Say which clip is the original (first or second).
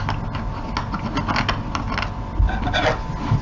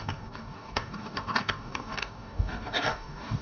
first